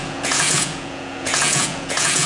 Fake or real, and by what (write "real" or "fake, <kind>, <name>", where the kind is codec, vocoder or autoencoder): fake, vocoder, Vocos